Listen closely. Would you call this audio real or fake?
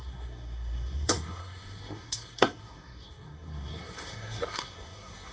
fake